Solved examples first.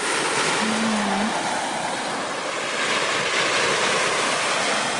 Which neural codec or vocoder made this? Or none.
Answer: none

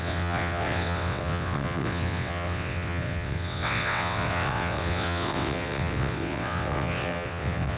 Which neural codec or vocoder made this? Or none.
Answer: vocoder, WaveNeXt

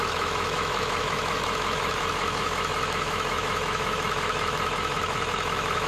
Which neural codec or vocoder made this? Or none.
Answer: autoencoder, DAC-VAE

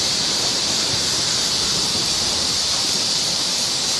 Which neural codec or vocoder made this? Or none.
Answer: vocoder, BigVGAN v2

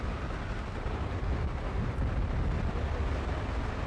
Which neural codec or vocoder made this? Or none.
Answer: none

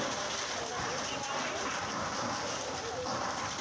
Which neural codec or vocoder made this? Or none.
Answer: vocoder, BigVGAN v2